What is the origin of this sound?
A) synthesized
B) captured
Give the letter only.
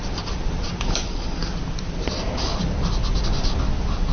B